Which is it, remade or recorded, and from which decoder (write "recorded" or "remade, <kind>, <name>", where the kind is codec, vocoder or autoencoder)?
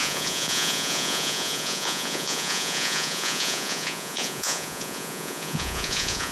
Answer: remade, vocoder, Vocos